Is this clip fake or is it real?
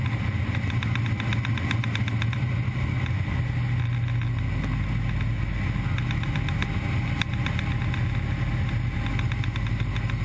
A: real